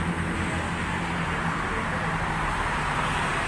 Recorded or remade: recorded